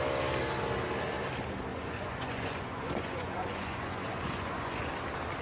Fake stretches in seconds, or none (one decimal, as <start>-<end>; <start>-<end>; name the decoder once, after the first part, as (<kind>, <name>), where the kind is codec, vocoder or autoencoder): 1.7-4.9 (vocoder, Vocos)

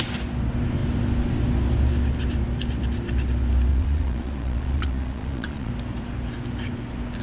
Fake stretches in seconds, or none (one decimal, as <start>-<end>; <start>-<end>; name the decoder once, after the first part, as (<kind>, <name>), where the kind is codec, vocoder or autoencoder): 3.7-5.7 (vocoder, Vocos)

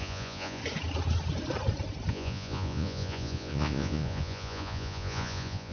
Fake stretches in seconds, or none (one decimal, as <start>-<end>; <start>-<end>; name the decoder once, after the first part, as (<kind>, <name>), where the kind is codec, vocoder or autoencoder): 0.0-0.6 (vocoder, Vocos); 2.1-5.7

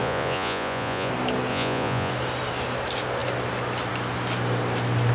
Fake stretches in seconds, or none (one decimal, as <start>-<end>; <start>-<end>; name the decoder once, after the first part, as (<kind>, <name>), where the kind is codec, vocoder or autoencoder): 0.0-1.1 (vocoder, Vocos); 1.5-2.1